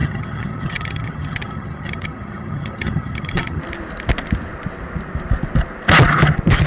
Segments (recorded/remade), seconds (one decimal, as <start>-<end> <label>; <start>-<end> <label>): 0.0-3.6 remade; 3.6-6.7 recorded